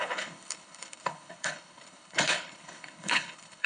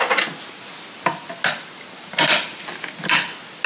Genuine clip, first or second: second